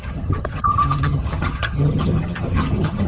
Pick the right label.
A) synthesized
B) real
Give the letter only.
A